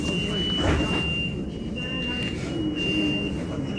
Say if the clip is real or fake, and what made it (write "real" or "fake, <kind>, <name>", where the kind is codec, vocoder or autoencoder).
real